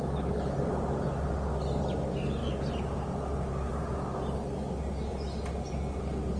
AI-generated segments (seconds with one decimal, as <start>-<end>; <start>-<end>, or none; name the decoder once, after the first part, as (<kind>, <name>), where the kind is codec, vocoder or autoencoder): none